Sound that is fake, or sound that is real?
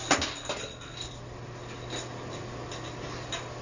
real